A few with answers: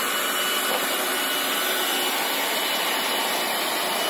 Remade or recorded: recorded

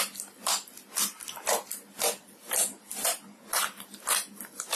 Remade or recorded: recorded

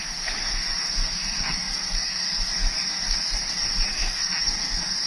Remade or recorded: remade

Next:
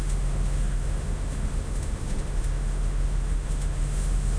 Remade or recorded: remade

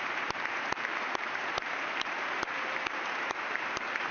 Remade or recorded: remade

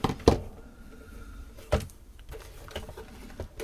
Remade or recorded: remade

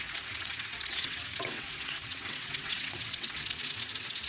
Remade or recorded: remade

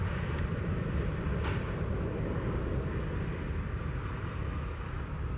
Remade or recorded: recorded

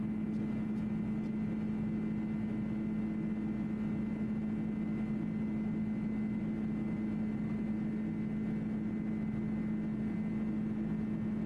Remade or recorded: recorded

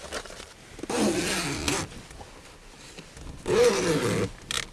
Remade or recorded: recorded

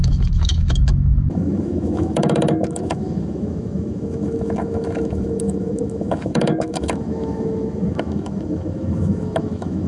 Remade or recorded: remade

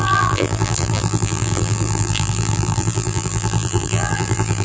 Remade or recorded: remade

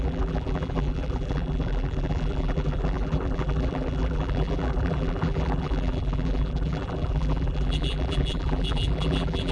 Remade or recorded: remade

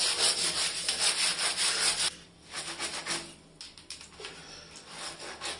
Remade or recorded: recorded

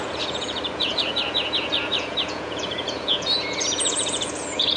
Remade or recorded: remade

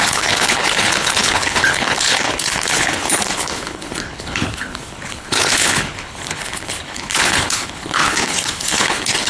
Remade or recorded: remade